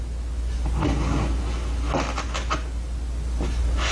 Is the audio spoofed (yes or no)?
no